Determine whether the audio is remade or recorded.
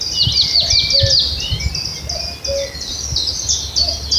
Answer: recorded